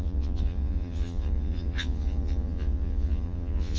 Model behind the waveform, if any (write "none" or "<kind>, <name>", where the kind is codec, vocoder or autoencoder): vocoder, Vocos